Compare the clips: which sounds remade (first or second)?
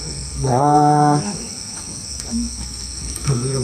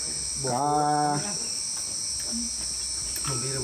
first